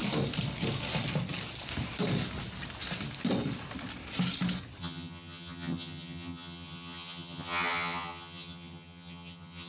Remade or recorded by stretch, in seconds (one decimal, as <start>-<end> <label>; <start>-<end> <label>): 0.0-4.8 recorded; 4.8-9.7 remade